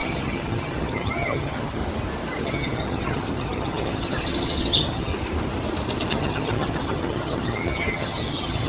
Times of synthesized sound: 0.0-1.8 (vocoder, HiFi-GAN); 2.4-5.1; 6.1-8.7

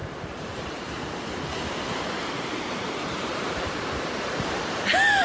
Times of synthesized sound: 0.0-0.9 (vocoder, BigVGAN v2); 1.5-4.6